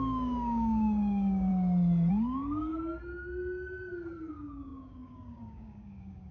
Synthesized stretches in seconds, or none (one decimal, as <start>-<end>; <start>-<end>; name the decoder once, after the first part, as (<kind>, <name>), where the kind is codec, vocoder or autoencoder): 0.0-1.5 (codec, DAC); 2.1-2.7; 4.3-6.3